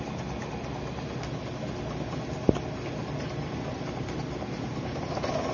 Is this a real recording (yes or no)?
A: yes